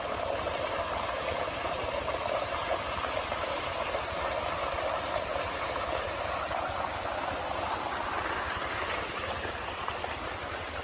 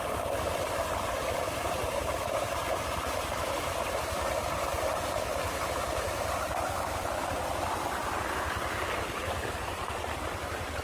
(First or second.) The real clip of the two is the first